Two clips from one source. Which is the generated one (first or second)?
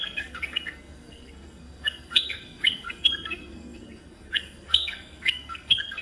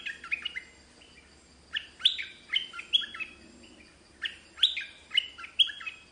first